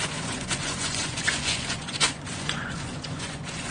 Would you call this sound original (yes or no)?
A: no